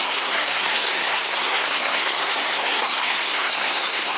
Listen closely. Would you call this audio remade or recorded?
remade